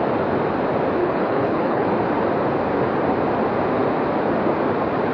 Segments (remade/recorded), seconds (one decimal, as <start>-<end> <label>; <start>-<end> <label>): 0.0-1.0 recorded; 1.0-1.9 remade; 1.9-5.1 recorded